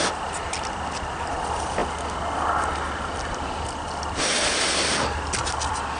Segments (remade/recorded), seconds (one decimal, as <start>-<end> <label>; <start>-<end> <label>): 0.0-6.0 recorded

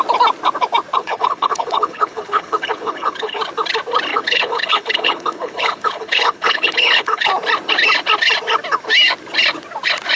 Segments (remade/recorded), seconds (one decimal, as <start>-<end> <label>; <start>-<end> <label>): 0.0-1.0 recorded; 1.0-3.4 remade; 3.4-4.1 recorded; 4.1-7.3 remade; 7.3-10.2 recorded